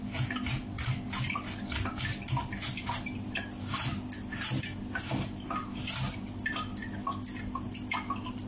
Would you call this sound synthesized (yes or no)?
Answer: no